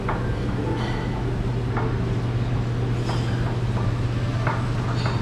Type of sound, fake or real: real